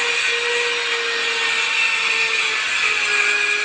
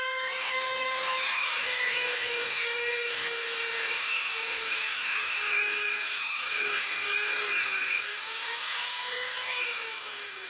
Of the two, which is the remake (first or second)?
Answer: second